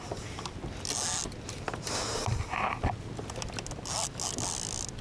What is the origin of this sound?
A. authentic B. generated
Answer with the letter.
A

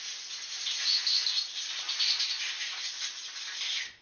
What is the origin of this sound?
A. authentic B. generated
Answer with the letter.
A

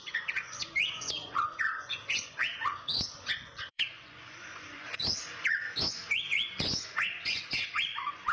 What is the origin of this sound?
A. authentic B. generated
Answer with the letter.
B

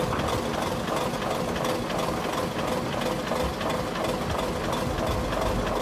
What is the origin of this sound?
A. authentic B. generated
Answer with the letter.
A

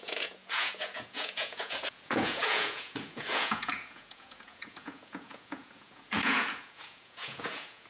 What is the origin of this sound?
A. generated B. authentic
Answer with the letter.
A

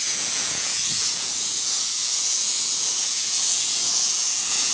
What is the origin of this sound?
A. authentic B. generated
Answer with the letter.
B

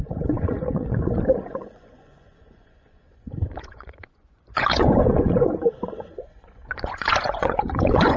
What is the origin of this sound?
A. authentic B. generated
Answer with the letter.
B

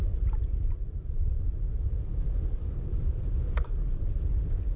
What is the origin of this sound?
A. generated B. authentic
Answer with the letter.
B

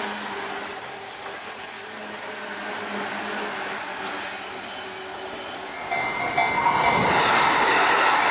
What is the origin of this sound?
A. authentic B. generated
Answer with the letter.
A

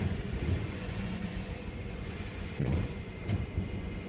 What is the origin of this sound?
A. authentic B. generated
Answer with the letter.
B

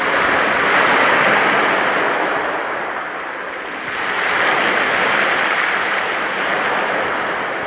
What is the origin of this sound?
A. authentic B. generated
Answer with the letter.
A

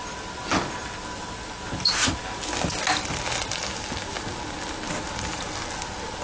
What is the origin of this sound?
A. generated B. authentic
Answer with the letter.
B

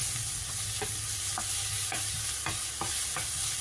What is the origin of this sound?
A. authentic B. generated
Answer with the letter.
A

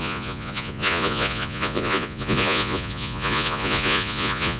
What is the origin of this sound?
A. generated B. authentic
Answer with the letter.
A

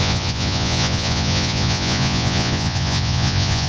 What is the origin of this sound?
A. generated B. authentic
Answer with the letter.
A